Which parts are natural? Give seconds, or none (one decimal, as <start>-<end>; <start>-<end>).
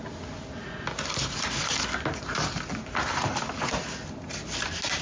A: 0.0-5.0